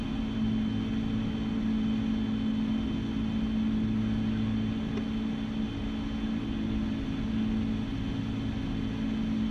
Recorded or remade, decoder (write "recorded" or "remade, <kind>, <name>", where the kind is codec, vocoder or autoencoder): recorded